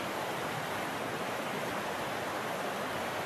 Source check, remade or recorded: recorded